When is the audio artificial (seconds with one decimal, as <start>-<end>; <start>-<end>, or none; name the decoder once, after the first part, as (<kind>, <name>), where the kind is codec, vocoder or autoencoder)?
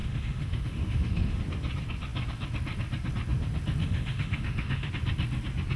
0.0-1.4 (autoencoder, DAC-VAE); 3.8-4.9